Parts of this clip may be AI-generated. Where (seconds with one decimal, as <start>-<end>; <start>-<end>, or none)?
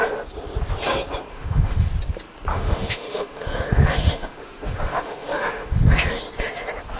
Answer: 1.3-1.9; 2.5-6.2